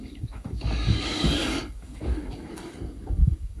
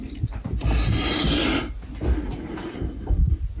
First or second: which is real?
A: second